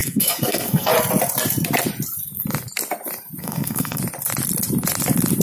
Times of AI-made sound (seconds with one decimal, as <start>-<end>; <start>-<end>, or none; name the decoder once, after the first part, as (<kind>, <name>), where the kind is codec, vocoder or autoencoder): 0.0-0.9 (codec, SNAC); 3.4-4.0